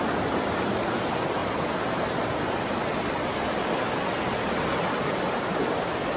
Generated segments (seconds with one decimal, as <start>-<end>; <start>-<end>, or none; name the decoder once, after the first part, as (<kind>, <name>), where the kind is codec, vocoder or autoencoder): none